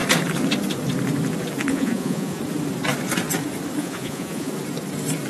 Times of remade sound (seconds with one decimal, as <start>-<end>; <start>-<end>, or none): 1.7-2.4; 3.8-4.5